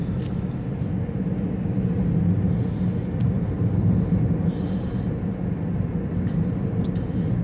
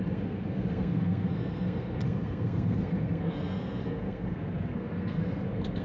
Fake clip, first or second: second